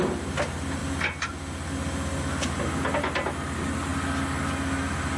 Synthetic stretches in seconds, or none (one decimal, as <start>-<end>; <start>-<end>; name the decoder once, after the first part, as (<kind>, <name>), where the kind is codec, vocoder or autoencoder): none